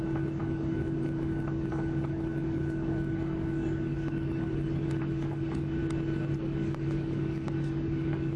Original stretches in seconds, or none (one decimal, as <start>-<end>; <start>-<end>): 5.8-6.4